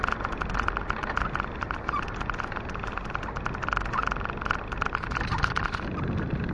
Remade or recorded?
recorded